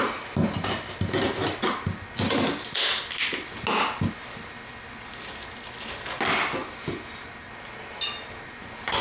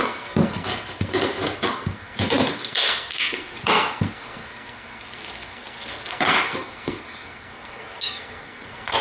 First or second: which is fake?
second